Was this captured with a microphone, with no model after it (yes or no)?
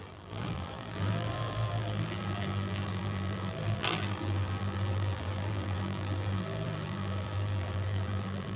no